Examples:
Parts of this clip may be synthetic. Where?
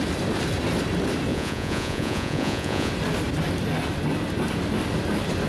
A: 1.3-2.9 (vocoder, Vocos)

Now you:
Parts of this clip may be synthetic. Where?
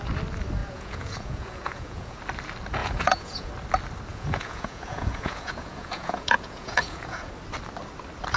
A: 0.6-2.2 (vocoder, Vocos); 2.8-3.5; 4.1-7.3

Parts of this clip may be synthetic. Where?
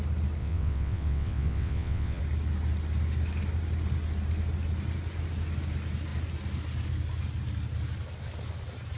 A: 0.4-2.2 (vocoder, WaveNeXt)